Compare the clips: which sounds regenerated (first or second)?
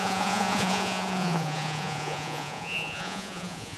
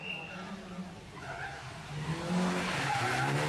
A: first